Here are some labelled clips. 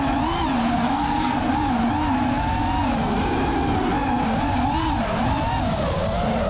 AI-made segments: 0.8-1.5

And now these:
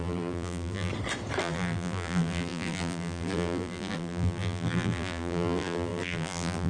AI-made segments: 0.0-0.9; 1.4-6.7

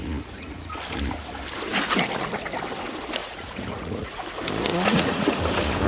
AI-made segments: 0.0-0.8; 3.2-4.2; 4.7-5.4

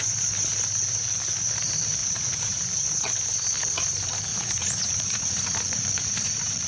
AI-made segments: 2.0-2.6; 4.3-6.7

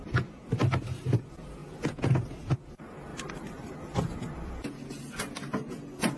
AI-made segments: 3.1-4.5